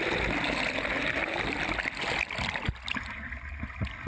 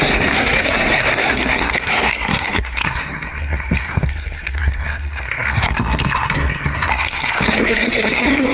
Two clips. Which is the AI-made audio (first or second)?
second